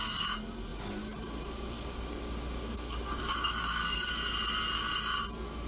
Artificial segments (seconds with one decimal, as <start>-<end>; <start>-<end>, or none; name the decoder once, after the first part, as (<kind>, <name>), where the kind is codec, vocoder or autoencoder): 0.7-4.1 (codec, DAC)